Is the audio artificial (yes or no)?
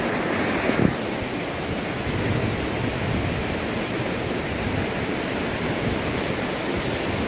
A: no